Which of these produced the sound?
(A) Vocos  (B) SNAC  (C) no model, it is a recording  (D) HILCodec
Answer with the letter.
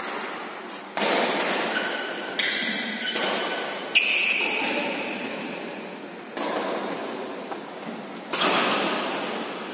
C